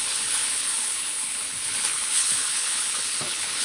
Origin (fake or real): fake